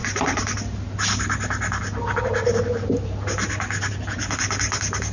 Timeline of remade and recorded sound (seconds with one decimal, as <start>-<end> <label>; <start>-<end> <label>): 0.0-5.1 recorded